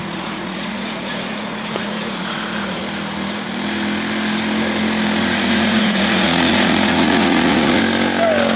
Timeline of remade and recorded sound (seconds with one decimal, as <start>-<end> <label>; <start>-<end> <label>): 0.0-2.8 remade; 2.8-5.2 recorded; 5.2-7.8 remade; 7.8-8.6 recorded